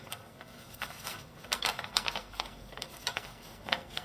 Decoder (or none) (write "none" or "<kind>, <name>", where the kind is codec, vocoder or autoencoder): codec, SNAC